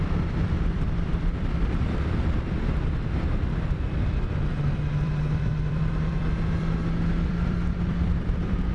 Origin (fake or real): fake